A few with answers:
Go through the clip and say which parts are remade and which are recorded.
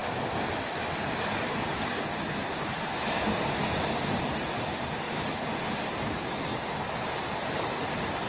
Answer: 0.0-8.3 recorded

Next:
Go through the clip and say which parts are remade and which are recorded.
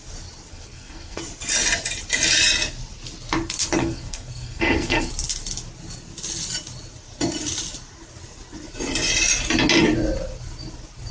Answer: 0.0-0.5 recorded; 0.5-1.2 remade; 1.2-3.8 recorded; 3.8-5.1 remade; 5.1-11.1 recorded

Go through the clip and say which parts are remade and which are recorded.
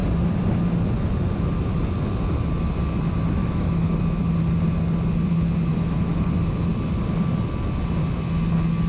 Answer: 0.0-3.4 recorded; 3.4-4.0 remade; 4.0-5.7 recorded; 5.7-6.3 remade; 6.3-8.9 recorded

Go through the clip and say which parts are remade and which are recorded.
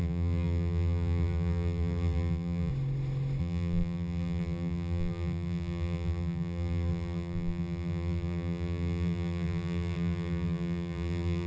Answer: 0.0-2.7 remade; 2.7-3.4 recorded; 3.4-11.5 remade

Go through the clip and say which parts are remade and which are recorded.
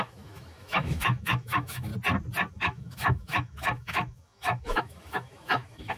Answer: 0.0-1.9 remade; 1.9-2.5 recorded; 2.5-6.0 remade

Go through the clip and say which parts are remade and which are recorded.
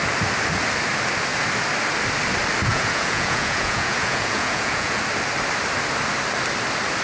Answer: 0.0-2.7 recorded; 2.7-5.0 remade; 5.0-7.0 recorded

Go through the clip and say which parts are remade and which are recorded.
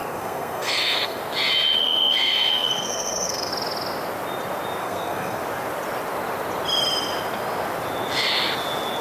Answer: 0.0-1.2 remade; 1.2-1.8 recorded; 1.8-3.5 remade; 3.5-4.8 recorded; 4.8-5.4 remade; 5.4-9.0 recorded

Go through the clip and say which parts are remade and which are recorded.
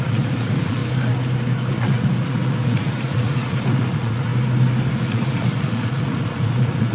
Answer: 0.0-0.8 remade; 0.8-1.7 recorded; 1.7-4.3 remade; 4.3-4.9 recorded; 4.9-6.9 remade